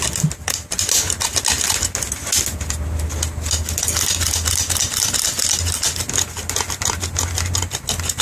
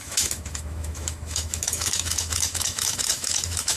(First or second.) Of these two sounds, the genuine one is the first